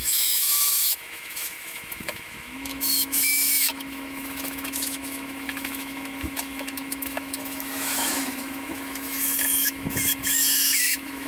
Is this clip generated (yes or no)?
yes